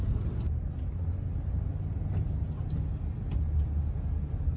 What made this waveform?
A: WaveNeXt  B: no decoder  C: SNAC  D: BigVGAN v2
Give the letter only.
B